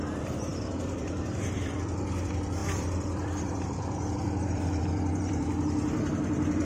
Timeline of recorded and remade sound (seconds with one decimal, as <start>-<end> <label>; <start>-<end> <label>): 0.0-6.6 remade